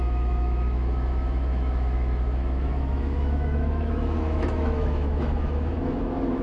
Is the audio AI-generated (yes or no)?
yes